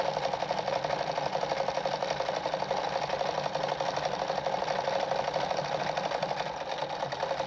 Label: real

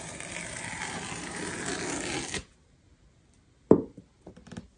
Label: real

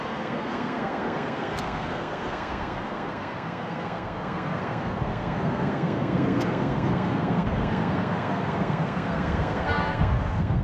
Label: fake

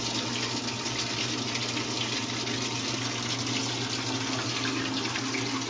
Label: real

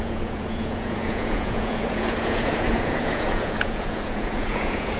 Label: fake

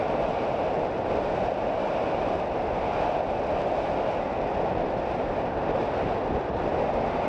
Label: real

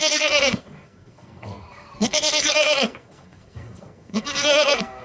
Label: fake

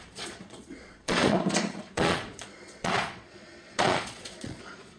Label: fake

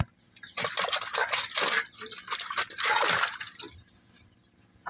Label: real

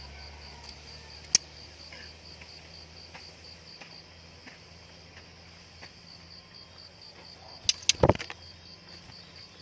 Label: real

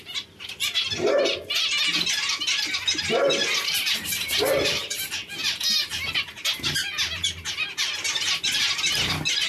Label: real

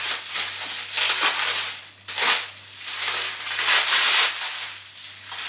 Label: real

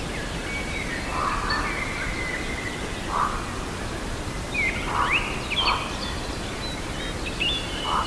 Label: real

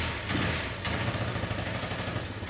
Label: real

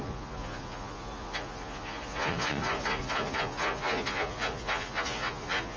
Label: fake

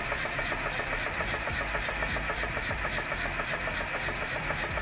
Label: fake